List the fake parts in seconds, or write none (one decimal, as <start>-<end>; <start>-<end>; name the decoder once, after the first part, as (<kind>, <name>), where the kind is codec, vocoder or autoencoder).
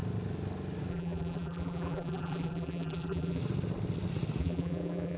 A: 0.9-3.4 (vocoder, BigVGAN v2); 4.4-5.2